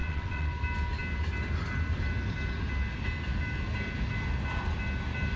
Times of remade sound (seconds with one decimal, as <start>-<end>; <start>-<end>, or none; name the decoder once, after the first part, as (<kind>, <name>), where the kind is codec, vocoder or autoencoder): 0.0-0.5 (vocoder, WaveNeXt)